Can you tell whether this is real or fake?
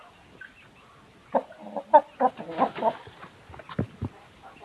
real